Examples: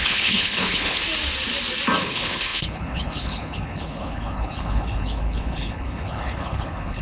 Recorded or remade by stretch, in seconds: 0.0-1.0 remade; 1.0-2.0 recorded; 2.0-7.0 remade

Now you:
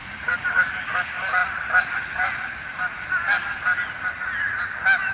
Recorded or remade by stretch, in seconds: 0.0-5.1 recorded

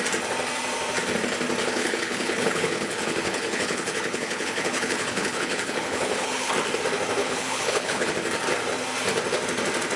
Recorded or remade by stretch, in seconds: 0.0-1.6 recorded; 1.6-6.5 remade; 6.5-7.2 recorded; 7.2-8.1 remade; 8.1-10.0 recorded

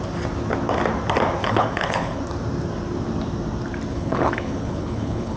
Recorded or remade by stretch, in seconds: 0.0-1.4 recorded; 1.4-2.2 remade; 2.2-3.9 recorded; 3.9-5.4 remade

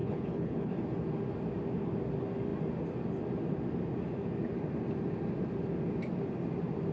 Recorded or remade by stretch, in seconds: 0.0-0.7 remade; 0.7-6.9 recorded

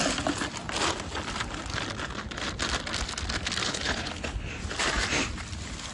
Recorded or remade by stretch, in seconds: 0.0-3.6 recorded; 3.6-4.5 remade; 4.5-5.9 recorded

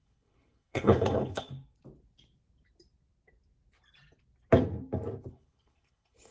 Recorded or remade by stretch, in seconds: 0.0-1.5 remade; 1.5-5.3 recorded; 5.3-6.3 remade

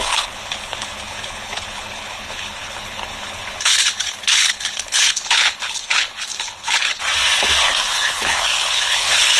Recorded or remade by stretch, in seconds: 0.0-7.0 remade; 7.0-7.9 recorded; 7.9-9.4 remade